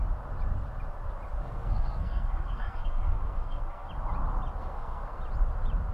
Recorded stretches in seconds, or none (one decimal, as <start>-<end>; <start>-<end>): 0.0-1.4; 3.9-4.6; 5.2-5.9